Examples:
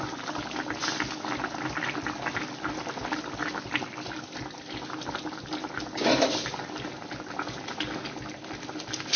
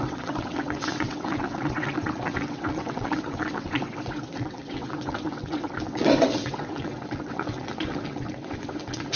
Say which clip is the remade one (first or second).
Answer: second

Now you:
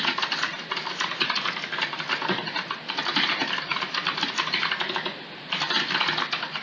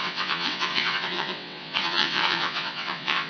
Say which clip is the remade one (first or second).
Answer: second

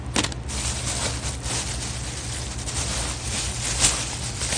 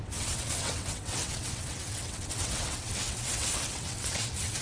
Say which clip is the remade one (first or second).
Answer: second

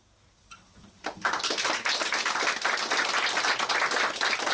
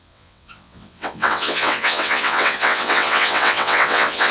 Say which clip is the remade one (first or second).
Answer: second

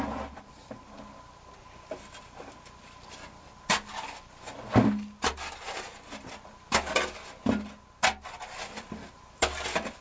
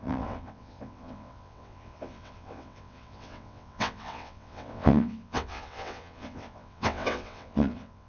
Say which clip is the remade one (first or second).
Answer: second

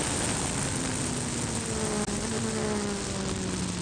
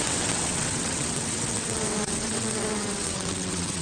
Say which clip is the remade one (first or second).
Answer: second